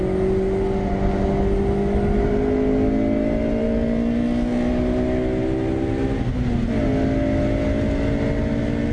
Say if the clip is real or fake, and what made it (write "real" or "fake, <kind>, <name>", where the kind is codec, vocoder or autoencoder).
real